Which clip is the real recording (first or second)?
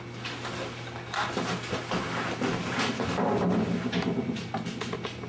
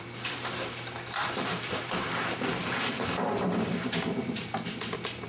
first